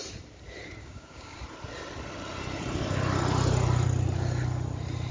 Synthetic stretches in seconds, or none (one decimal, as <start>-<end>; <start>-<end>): 0.8-1.4